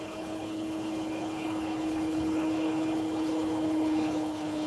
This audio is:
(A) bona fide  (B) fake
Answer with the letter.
B